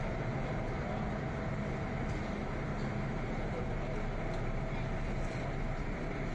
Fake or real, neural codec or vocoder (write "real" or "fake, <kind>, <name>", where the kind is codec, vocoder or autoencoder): real